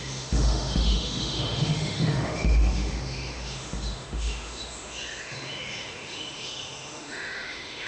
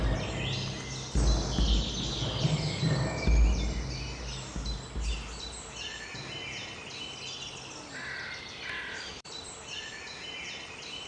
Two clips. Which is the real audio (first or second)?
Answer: second